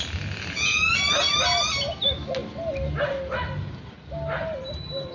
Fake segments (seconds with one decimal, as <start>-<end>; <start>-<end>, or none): none